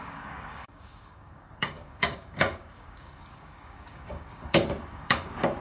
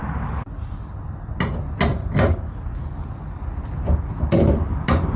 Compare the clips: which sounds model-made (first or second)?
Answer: first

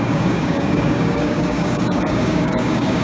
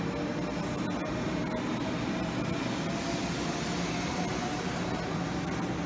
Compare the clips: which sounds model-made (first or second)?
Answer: first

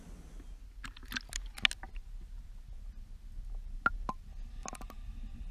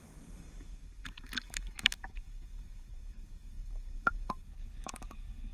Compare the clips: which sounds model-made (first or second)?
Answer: second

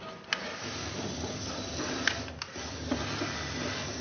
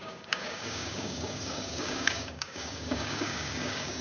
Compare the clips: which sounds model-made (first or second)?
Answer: second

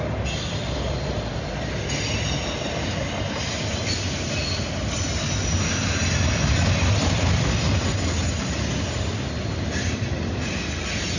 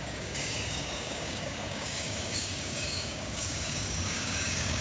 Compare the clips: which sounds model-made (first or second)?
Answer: second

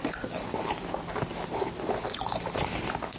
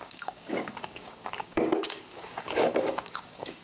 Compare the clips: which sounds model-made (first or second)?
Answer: second